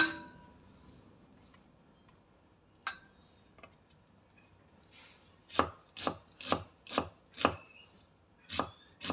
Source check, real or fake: real